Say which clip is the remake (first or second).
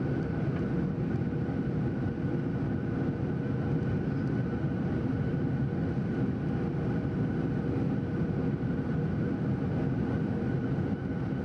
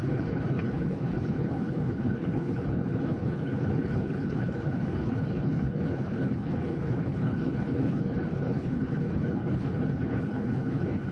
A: second